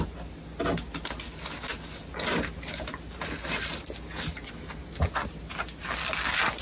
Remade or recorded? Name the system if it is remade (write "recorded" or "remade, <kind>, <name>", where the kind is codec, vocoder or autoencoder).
recorded